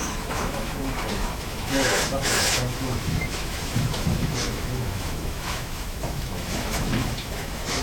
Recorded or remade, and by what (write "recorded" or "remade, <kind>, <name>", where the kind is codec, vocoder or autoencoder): remade, autoencoder, DAC-VAE